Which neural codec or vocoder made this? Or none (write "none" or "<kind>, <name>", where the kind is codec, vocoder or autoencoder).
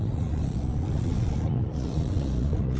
vocoder, Vocos